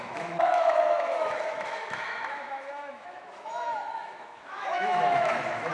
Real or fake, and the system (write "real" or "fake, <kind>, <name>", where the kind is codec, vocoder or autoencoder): fake, autoencoder, DAC-VAE